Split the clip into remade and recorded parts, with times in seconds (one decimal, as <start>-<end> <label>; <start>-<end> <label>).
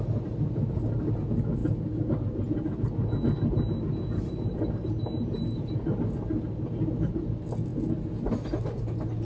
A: 0.0-9.2 recorded